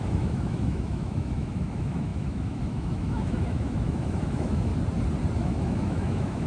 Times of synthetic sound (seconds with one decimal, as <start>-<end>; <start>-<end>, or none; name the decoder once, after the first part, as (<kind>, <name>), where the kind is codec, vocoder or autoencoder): 0.0-4.7 (autoencoder, DAC-VAE); 5.4-6.5